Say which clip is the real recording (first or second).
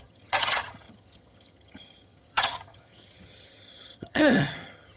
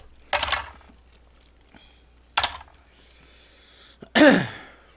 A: second